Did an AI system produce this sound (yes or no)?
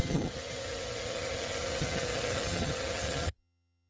yes